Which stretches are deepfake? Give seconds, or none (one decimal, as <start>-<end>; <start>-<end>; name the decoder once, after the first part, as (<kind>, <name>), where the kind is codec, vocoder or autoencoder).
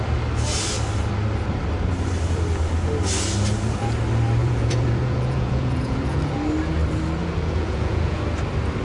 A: 4.4-6.4 (vocoder, Vocos); 7.2-8.2